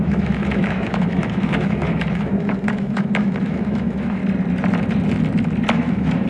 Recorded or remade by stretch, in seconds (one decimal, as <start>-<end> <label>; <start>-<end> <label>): 0.0-4.2 remade; 4.2-5.7 recorded; 5.7-6.3 remade